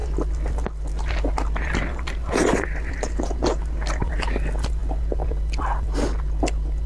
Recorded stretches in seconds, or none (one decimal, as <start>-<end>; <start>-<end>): 0.0-6.9